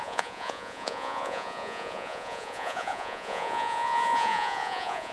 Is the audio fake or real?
fake